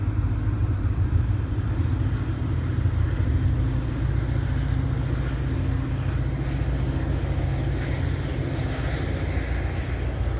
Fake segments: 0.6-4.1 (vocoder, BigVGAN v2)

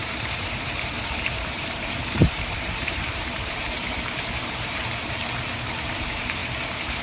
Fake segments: 0.0-7.0 (vocoder, BigVGAN v2)